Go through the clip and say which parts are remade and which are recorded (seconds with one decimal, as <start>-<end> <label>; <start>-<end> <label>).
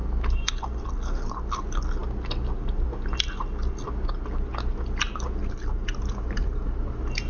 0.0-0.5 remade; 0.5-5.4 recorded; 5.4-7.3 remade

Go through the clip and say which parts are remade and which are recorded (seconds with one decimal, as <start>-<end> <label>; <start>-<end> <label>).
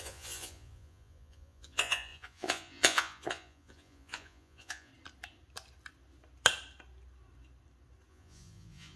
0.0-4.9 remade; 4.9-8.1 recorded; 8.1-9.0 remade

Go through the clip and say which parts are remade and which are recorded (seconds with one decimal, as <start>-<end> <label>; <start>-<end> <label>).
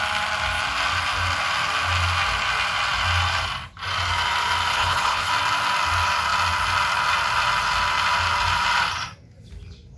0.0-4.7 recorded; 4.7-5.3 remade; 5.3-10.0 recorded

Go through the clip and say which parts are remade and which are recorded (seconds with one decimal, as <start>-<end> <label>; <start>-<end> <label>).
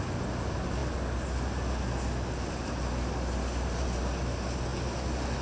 0.0-5.4 recorded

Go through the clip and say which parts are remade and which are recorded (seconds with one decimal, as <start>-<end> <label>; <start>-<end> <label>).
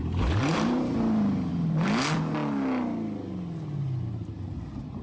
0.0-1.5 remade; 1.5-4.5 recorded; 4.5-5.0 remade